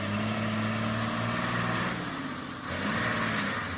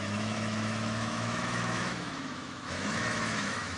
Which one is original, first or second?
first